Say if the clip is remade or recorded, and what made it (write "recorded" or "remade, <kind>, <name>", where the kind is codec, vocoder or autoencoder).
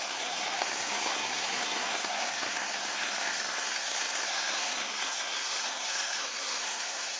remade, codec, SNAC